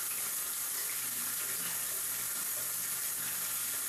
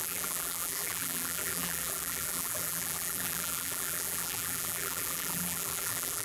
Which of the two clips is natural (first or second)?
first